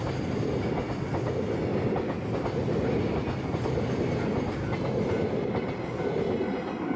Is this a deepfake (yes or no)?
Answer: no